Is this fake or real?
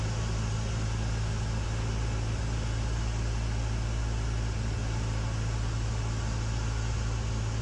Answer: real